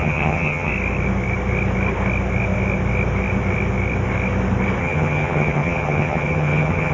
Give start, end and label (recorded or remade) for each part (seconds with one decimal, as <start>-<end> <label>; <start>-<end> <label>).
0.0-0.7 remade; 0.7-4.8 recorded; 4.8-6.9 remade